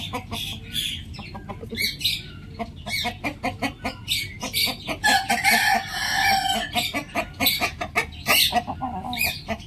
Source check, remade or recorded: recorded